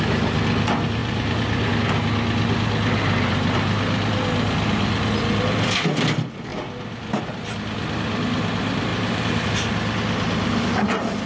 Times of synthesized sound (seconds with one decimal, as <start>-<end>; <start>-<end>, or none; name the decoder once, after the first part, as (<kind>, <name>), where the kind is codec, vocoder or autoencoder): 1.0-1.7 (vocoder, BigVGAN v2); 8.9-9.5